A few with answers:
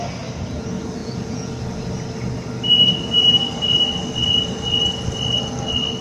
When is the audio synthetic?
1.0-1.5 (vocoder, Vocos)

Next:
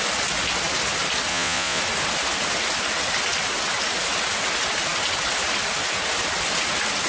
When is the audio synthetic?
1.3-1.8 (vocoder, Vocos)

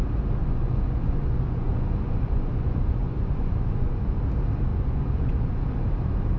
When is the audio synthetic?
0.4-4.2 (vocoder, Vocos); 4.7-5.6